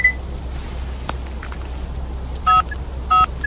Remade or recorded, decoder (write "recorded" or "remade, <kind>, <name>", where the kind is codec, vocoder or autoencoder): recorded